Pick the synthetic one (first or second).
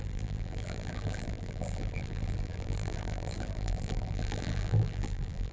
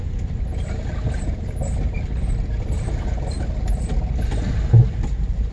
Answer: first